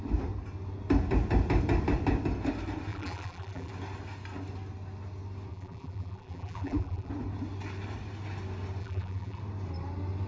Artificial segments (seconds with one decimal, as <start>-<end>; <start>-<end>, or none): 2.9-3.7; 5.5-7.1; 8.8-9.4